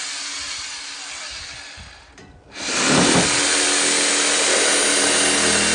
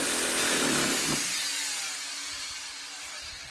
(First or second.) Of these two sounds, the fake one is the second